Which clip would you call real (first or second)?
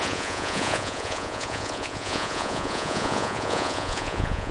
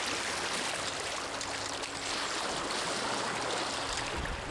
second